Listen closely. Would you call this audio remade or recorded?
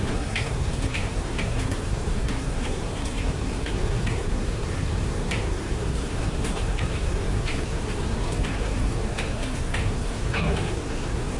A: remade